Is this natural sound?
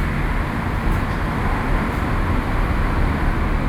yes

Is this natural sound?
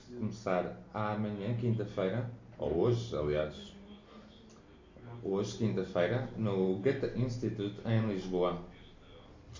yes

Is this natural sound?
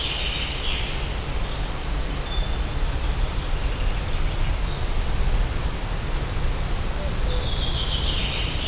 yes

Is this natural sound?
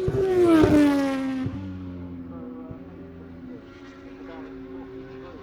yes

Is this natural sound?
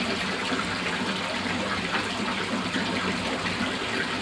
yes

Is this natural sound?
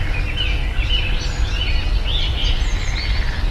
yes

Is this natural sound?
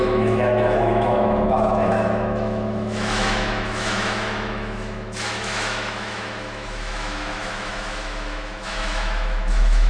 no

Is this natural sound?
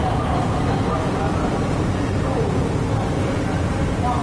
yes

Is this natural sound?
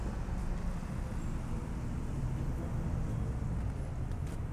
yes